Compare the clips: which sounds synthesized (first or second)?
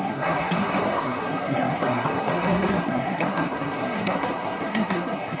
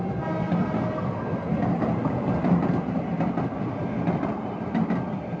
first